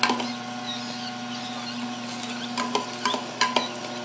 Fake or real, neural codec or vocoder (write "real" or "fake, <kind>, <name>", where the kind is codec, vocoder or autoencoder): real